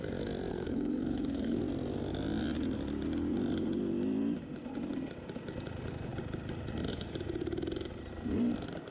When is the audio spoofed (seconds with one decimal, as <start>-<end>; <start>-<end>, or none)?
0.5-1.6